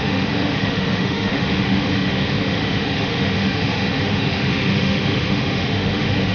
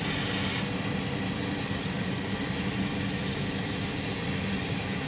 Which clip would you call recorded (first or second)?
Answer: second